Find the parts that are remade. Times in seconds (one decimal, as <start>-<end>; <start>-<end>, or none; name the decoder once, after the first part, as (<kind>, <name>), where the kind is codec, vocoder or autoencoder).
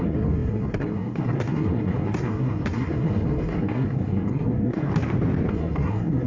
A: 0.0-4.9 (codec, SNAC); 5.5-6.3